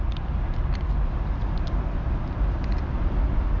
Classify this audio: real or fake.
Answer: real